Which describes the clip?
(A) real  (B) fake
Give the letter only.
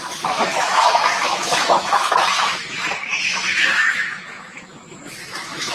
B